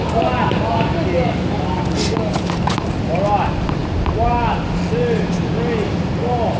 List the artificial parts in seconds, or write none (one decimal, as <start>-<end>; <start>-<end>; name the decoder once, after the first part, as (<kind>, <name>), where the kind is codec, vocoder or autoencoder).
none